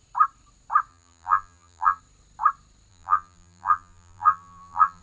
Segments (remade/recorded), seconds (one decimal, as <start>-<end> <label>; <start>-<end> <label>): 0.0-0.9 recorded; 0.9-2.0 remade; 2.0-2.9 recorded; 2.9-5.0 remade